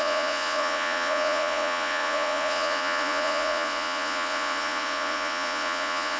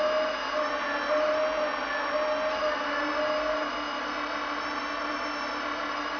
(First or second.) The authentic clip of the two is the second